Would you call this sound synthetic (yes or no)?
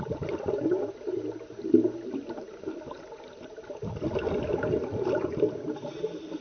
no